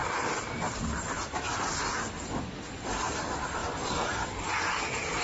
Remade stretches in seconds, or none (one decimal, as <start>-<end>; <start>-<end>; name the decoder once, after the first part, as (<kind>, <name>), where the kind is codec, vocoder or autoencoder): none